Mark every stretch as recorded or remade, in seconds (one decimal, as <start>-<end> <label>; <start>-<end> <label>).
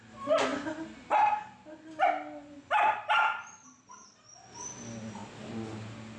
0.0-6.2 recorded